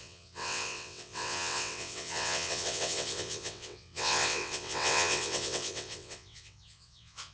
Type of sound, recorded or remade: remade